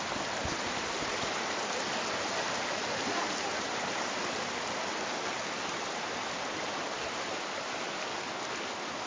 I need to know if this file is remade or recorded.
recorded